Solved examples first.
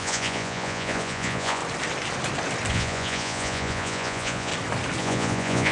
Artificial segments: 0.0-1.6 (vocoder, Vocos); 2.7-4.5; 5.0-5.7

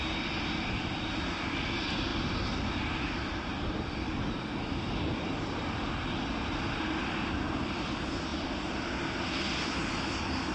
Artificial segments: none

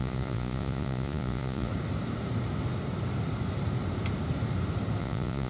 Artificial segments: 0.0-1.7 (vocoder, Vocos); 5.0-5.5

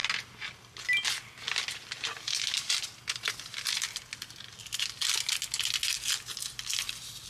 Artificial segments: none

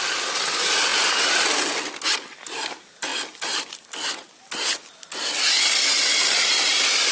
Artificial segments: none

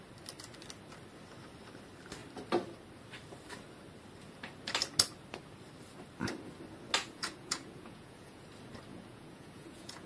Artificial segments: 7.0-8.4 (vocoder, Vocos); 8.9-10.1

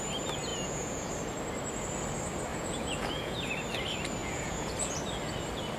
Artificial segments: 0.5-1.1 (vocoder, Vocos); 2.5-3.5; 4.2-4.7

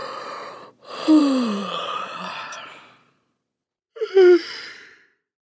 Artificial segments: 0.0-1.2 (vocoder, Vocos); 1.6-3.9